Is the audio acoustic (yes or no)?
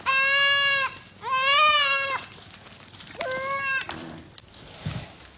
yes